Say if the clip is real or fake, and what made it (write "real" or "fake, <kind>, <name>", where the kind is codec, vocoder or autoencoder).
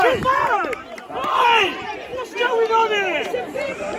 fake, vocoder, BigVGAN v2